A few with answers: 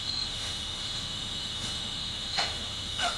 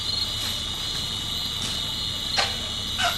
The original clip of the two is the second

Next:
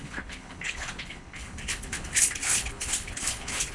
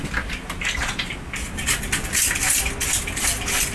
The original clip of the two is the second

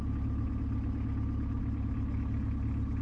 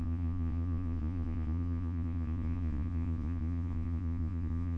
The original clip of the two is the first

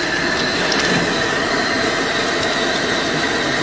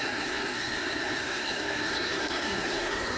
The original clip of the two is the first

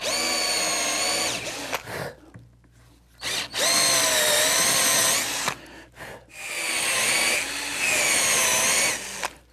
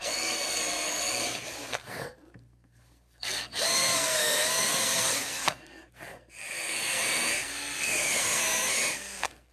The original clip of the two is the first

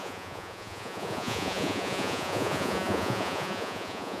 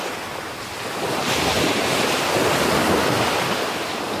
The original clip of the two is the second